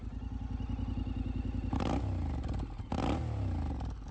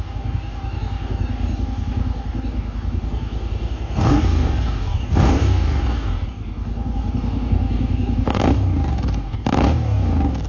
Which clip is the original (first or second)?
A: first